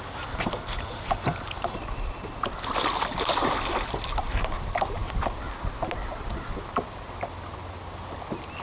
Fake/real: real